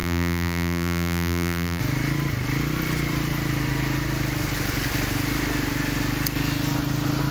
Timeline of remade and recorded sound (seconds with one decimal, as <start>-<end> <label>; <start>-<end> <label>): 0.0-1.8 remade; 1.8-7.3 recorded